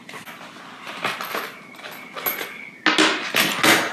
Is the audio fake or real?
real